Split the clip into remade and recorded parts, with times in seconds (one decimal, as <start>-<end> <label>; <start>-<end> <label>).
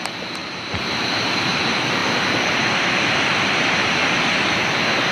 0.0-0.4 recorded; 0.4-1.6 remade; 1.6-2.0 recorded; 2.0-4.0 remade; 4.0-5.1 recorded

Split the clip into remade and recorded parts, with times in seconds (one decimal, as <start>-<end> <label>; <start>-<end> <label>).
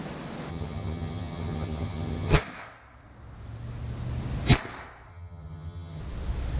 0.0-0.5 recorded; 0.5-2.4 remade; 2.4-5.1 recorded; 5.1-6.0 remade; 6.0-6.6 recorded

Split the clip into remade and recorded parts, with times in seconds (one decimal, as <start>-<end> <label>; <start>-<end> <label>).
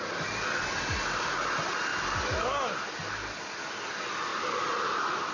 0.0-5.3 recorded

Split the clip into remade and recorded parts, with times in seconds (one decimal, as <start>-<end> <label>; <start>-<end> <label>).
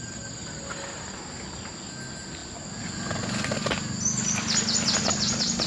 0.0-5.7 recorded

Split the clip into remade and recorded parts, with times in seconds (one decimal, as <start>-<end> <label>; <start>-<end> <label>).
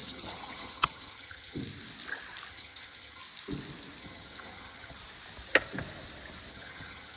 0.0-1.6 remade; 1.6-2.5 recorded; 2.5-3.2 remade; 3.2-4.0 recorded; 4.0-5.0 remade; 5.0-6.5 recorded; 6.5-7.2 remade